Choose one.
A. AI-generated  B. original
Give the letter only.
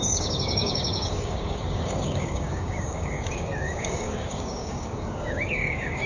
A